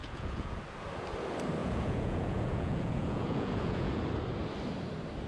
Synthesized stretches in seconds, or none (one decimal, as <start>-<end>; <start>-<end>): 0.0-0.6; 1.6-4.0